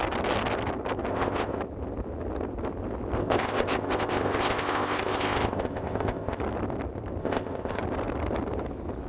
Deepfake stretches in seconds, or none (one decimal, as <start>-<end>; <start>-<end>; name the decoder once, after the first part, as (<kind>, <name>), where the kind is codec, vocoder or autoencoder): 1.1-1.6 (codec, ZipCodec); 3.2-6.4; 7.2-7.8